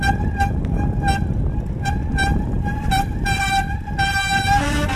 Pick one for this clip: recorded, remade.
recorded